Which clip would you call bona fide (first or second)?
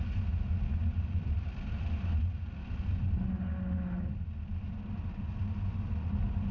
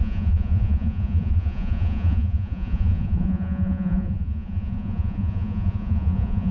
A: first